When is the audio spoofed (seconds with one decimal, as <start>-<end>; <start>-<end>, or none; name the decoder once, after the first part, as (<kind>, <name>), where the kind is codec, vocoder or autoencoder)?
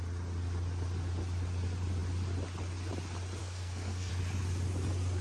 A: 3.4-4.1 (codec, SNAC)